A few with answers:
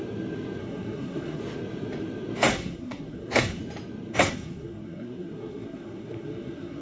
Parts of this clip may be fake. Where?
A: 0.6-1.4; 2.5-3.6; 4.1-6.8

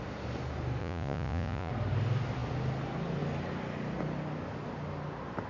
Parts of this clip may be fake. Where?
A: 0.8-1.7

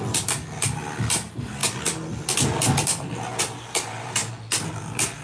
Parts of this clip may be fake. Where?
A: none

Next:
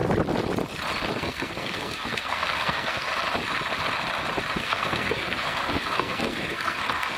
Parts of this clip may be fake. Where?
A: 1.1-3.1; 4.5-7.2

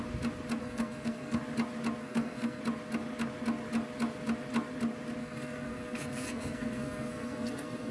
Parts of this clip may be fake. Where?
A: 0.6-1.4; 2.0-2.6; 5.2-7.9

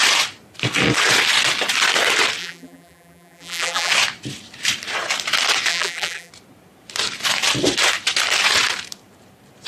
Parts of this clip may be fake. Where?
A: 2.4-3.9; 5.7-6.3

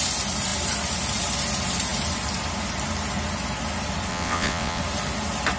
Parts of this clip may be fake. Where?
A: 4.1-4.8